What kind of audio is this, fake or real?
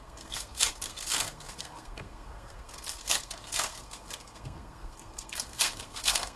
fake